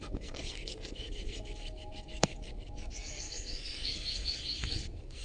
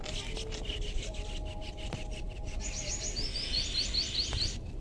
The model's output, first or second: first